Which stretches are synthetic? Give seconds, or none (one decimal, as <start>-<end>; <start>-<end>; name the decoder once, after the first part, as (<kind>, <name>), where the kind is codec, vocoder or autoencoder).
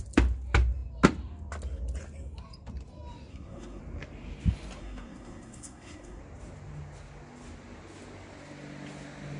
3.3-3.8 (codec, SNAC); 4.8-6.2